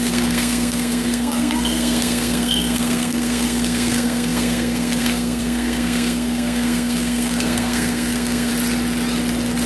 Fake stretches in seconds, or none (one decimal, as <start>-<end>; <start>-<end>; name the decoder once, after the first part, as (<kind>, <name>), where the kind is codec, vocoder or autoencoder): 0.0-8.5 (codec, SNAC)